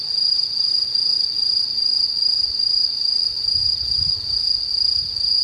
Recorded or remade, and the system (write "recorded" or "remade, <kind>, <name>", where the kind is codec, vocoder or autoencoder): recorded